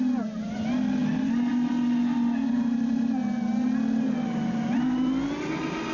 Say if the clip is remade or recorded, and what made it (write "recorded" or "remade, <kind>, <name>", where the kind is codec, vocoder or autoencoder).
recorded